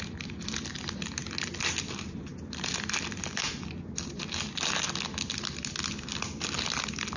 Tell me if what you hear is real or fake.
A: real